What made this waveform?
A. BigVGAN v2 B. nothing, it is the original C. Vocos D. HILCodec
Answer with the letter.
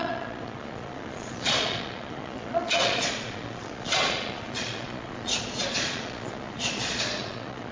C